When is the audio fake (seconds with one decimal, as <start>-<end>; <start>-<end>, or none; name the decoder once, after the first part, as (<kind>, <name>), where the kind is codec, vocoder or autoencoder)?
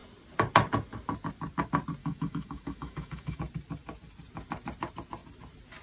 2.0-3.4 (autoencoder, DAC-VAE)